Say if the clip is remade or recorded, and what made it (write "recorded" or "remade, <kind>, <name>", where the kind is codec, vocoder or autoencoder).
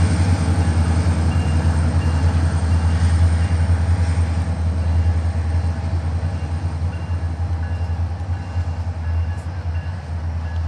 recorded